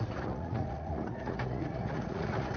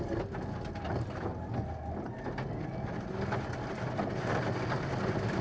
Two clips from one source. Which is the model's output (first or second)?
first